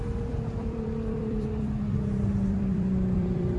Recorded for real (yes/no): no